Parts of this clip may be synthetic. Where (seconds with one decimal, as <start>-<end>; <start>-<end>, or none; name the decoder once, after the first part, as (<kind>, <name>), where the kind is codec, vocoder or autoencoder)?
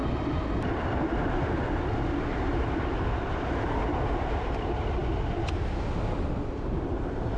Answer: none